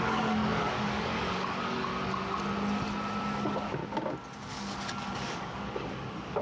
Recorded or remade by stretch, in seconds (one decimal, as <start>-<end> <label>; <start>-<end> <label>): 0.0-1.9 remade; 1.9-3.2 recorded; 3.2-3.8 remade; 3.8-4.4 recorded; 4.4-6.4 remade